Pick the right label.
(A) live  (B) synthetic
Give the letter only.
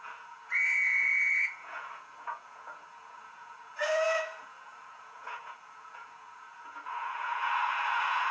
B